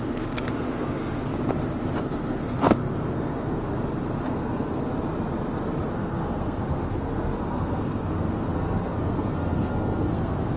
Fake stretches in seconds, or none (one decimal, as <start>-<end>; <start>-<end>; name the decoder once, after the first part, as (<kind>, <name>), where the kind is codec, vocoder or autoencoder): 0.0-1.3 (codec, SNAC); 2.0-3.7; 4.2-4.9; 5.9-10.6